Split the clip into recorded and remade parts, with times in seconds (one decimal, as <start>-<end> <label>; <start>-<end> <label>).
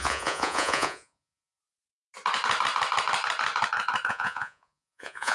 0.0-1.6 remade; 1.6-4.1 recorded; 4.1-5.3 remade